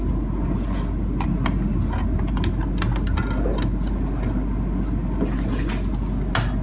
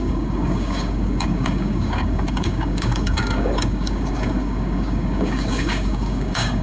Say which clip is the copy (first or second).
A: second